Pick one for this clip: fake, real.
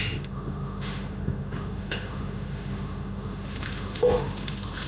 fake